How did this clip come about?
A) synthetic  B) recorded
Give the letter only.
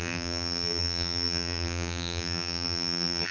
A